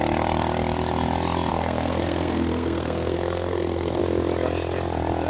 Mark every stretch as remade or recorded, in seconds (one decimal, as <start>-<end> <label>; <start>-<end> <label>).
0.0-1.5 recorded; 1.5-4.0 remade; 4.0-5.3 recorded